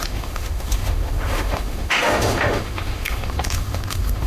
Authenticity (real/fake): fake